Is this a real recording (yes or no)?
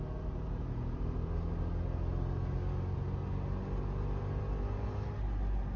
yes